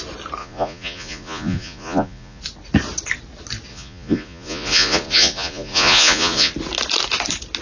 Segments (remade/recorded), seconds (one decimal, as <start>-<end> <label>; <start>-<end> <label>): 0.0-0.4 recorded; 0.4-2.4 remade; 2.4-3.7 recorded; 3.7-6.5 remade; 6.5-7.6 recorded